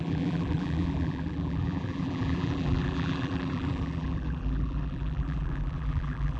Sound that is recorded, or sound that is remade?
remade